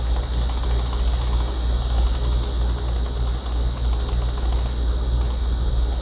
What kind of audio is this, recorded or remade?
recorded